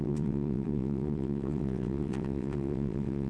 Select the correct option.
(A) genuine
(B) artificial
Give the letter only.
B